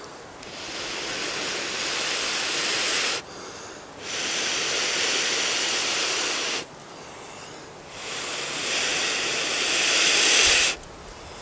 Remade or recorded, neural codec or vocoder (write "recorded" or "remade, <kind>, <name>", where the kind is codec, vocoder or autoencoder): recorded